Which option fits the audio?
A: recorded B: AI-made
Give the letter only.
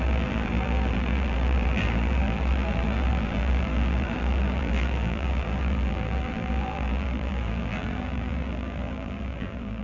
B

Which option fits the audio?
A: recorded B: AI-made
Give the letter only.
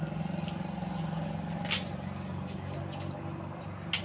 A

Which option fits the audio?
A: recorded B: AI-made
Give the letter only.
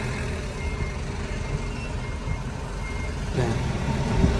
A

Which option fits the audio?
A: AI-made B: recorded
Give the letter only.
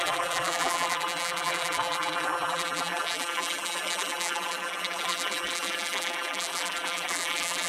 A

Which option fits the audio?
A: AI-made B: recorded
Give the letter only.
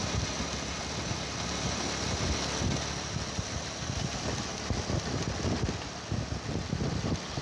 B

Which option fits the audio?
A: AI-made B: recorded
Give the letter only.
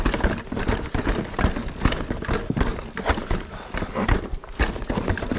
B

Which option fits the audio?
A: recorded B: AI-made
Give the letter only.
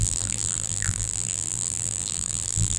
B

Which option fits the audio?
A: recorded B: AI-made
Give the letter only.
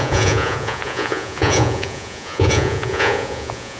B